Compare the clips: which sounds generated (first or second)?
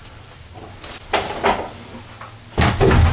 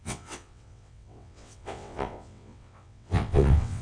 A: second